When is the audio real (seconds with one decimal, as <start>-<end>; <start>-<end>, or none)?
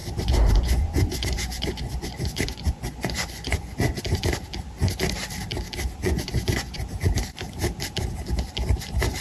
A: 4.0-6.0; 6.8-9.2